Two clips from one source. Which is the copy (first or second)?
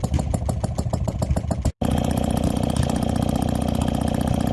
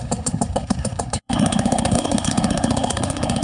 second